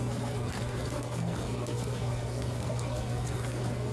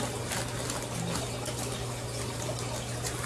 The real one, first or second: second